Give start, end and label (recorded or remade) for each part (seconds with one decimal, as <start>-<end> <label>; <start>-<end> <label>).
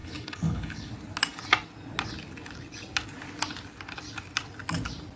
0.0-0.9 remade; 0.9-5.2 recorded